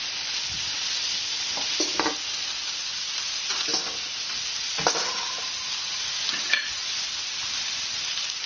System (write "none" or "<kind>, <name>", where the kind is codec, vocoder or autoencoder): none